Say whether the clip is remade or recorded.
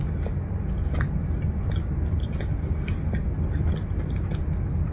recorded